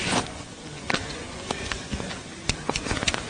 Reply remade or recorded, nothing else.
remade